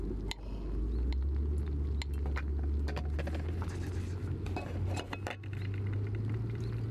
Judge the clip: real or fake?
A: real